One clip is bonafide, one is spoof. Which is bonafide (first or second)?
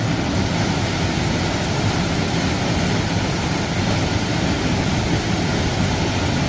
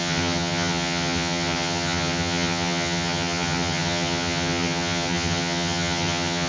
first